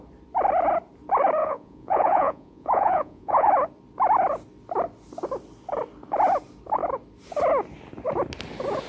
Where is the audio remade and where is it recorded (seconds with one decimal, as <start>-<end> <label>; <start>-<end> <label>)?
0.0-1.4 recorded; 1.4-3.5 remade; 3.5-8.9 recorded